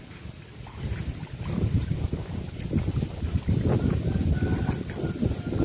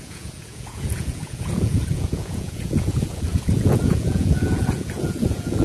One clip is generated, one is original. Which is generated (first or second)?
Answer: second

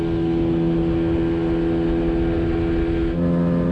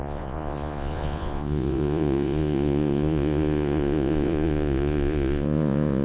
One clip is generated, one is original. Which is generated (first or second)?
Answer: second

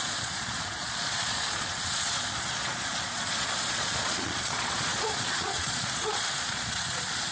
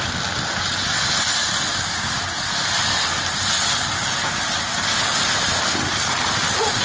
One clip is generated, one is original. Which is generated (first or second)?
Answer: first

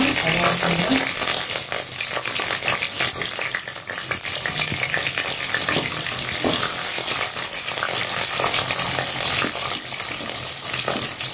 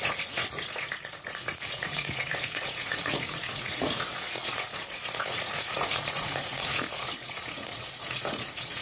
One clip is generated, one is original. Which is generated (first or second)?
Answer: second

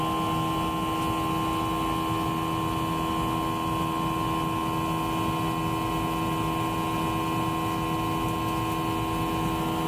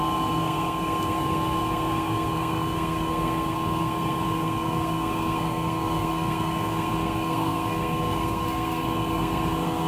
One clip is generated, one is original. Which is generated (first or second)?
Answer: second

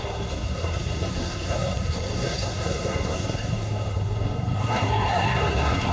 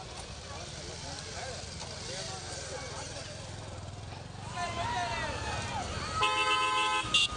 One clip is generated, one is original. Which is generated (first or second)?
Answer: first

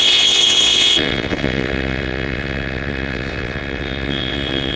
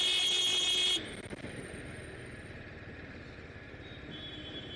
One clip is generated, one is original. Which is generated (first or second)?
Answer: first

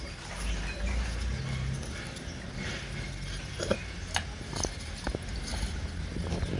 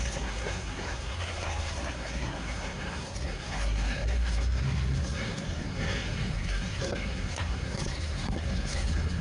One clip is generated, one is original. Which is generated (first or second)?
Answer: second